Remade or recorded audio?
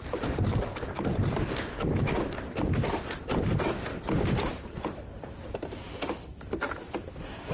remade